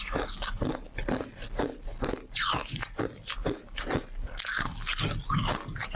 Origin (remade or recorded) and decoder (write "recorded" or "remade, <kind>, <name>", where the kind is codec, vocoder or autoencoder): recorded